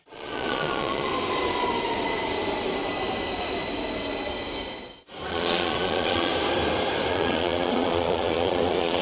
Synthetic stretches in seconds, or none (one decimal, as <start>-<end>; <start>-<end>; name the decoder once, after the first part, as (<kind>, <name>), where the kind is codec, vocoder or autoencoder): 0.0-1.1 (vocoder, Vocos); 5.3-6.3; 7.1-9.0